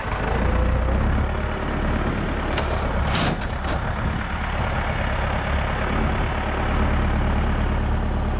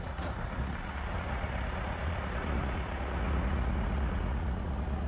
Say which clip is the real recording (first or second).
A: first